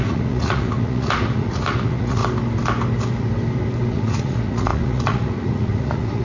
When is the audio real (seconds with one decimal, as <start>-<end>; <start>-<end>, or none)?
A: 2.2-3.9